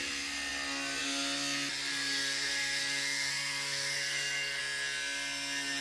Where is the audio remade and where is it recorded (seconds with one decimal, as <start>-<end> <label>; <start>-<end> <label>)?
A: 0.0-1.9 recorded; 1.9-4.6 remade; 4.6-5.8 recorded